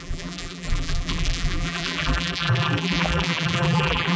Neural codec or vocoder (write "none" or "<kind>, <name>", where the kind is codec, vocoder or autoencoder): vocoder, BigVGAN v2